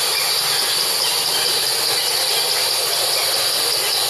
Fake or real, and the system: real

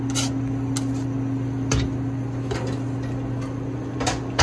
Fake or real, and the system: real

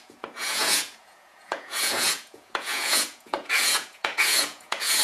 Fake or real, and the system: fake, vocoder, Vocos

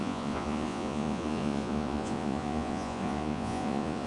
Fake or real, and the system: fake, vocoder, Vocos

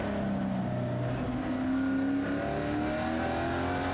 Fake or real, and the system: real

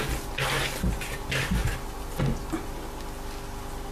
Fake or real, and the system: real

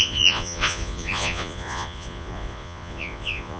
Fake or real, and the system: fake, vocoder, Vocos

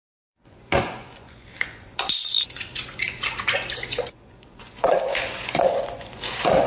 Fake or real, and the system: fake, vocoder, Vocos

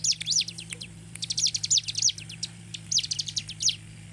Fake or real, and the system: real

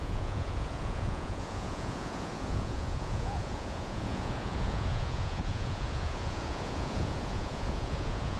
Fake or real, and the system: fake, vocoder, Vocos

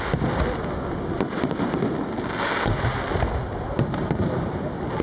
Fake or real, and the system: real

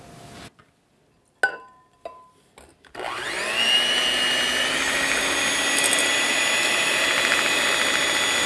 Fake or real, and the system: real